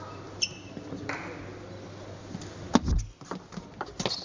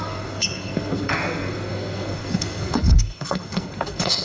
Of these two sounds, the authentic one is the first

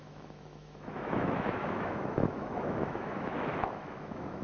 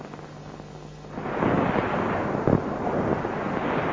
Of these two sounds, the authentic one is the second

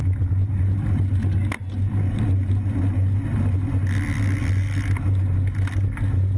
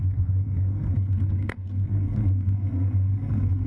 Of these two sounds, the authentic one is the first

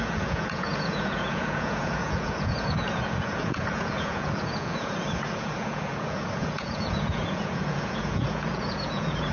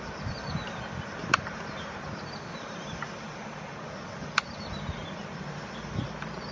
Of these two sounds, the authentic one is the second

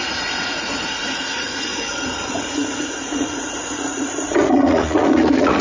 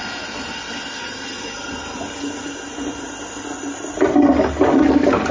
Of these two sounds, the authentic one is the second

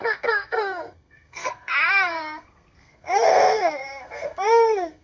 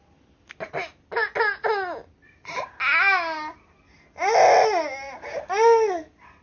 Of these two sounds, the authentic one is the second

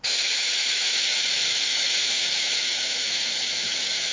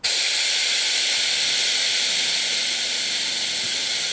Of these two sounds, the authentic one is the second